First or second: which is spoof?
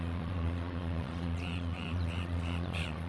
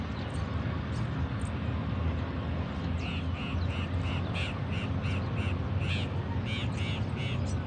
first